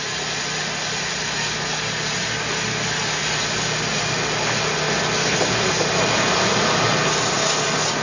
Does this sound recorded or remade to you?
recorded